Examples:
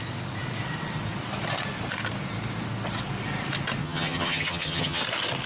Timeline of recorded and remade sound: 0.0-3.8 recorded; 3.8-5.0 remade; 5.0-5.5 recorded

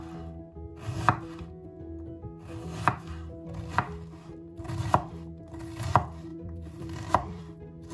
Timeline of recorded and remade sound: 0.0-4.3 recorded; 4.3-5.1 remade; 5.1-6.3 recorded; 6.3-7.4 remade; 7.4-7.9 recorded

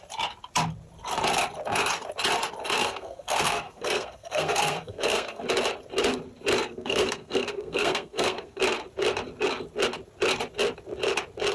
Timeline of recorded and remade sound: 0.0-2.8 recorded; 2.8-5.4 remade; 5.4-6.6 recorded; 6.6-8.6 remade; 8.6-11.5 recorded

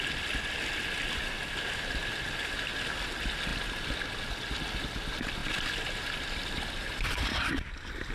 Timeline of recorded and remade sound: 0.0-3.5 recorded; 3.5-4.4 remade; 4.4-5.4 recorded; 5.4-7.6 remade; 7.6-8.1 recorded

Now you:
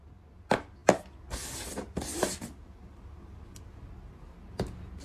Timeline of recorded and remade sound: 0.0-5.0 recorded